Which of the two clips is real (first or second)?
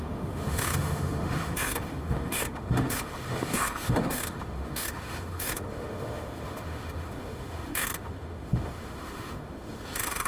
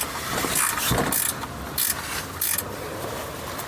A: second